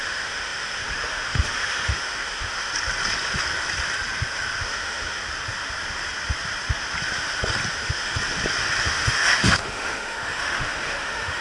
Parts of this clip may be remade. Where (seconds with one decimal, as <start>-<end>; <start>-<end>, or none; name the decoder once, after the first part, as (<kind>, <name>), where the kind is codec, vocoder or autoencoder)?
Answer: 0.0-2.7 (autoencoder, DAC-VAE); 4.6-5.2; 7.7-8.1; 8.8-11.4